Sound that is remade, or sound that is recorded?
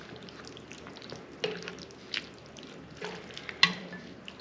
recorded